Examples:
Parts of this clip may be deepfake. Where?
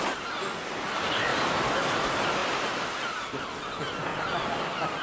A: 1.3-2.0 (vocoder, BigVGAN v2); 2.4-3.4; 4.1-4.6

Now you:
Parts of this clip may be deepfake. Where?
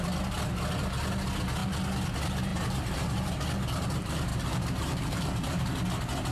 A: 2.5-3.2 (vocoder, BigVGAN v2); 4.3-5.7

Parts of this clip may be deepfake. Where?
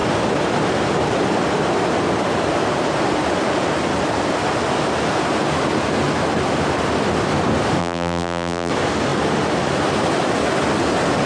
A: 7.8-8.7 (vocoder, BigVGAN v2)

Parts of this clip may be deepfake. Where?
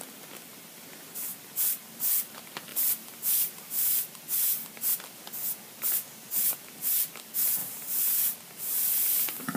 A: 2.7-3.8 (vocoder, BigVGAN v2)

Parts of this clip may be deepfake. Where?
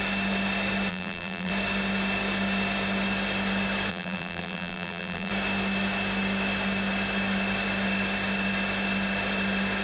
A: 0.9-1.5 (vocoder, BigVGAN v2); 3.9-5.3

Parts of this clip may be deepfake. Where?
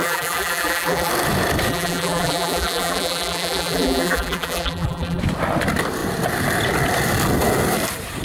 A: 0.0-1.1 (vocoder, BigVGAN v2); 1.7-5.2